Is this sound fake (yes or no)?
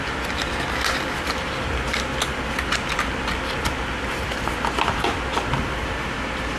no